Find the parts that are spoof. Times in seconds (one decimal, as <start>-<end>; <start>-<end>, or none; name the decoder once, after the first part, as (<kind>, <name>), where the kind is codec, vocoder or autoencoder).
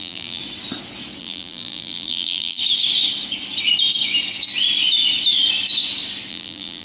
0.0-0.4 (vocoder, BigVGAN v2); 1.2-2.6; 6.3-6.8